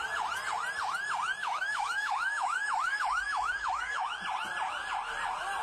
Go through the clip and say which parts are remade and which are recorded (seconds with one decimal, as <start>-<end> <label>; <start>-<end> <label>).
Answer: 0.0-1.4 recorded; 1.4-4.2 remade; 4.2-5.6 recorded